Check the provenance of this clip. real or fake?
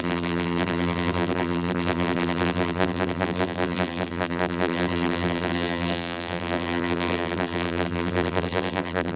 fake